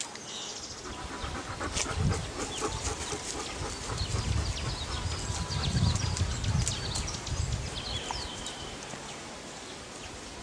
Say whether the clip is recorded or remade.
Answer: recorded